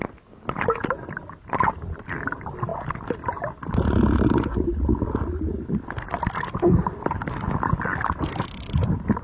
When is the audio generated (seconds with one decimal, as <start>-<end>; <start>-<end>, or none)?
none